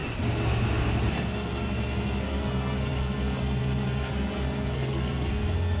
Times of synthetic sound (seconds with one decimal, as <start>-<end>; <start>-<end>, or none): 1.1-5.8